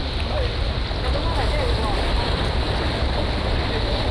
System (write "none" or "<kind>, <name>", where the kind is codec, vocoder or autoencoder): none